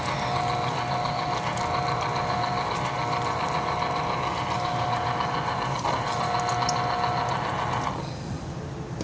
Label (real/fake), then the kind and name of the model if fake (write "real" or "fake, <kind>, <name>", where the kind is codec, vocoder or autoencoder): real